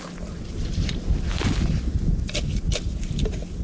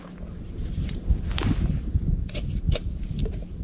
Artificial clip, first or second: second